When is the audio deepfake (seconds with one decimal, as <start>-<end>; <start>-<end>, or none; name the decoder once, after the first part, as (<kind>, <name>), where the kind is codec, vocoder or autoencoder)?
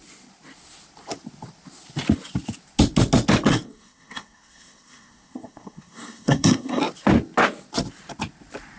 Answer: 3.5-6.8 (codec, SNAC)